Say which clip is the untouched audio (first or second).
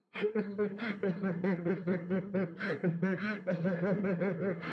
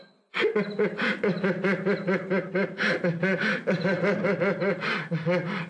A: second